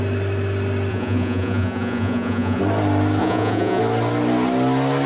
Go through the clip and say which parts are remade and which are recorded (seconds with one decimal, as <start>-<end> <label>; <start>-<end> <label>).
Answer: 0.0-0.9 recorded; 0.9-2.6 remade; 2.6-3.2 recorded; 3.2-3.8 remade; 3.8-5.1 recorded